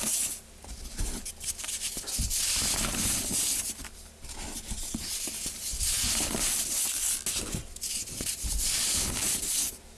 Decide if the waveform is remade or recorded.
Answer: recorded